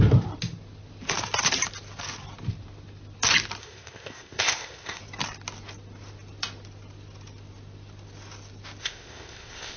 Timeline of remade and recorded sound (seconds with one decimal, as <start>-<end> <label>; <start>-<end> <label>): 0.0-3.6 recorded; 3.6-5.0 remade; 5.0-8.8 recorded; 8.8-9.8 remade